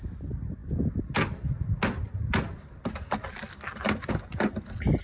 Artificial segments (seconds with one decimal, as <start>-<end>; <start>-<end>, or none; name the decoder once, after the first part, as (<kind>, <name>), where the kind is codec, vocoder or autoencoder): none